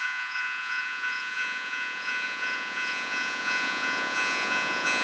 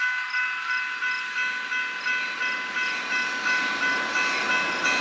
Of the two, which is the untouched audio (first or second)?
second